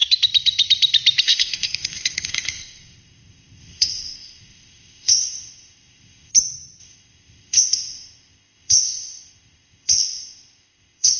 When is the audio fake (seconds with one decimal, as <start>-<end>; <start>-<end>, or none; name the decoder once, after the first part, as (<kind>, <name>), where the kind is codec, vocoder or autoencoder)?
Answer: 1.2-6.3 (codec, ZipCodec); 6.8-11.2